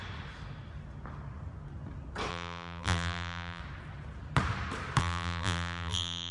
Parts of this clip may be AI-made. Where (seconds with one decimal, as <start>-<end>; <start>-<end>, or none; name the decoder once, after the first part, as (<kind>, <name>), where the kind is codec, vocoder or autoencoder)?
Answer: 2.3-3.6 (vocoder, BigVGAN v2); 5.0-6.3